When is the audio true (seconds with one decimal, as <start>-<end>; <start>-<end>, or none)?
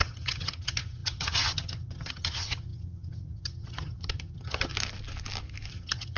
4.7-5.7